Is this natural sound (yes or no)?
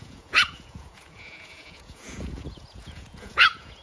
no